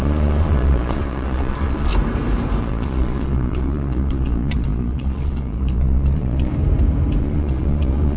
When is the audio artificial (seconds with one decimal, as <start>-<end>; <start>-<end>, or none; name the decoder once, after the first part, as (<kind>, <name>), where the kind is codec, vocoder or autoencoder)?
0.0-1.9 (vocoder, Vocos); 2.6-6.5; 7.2-8.2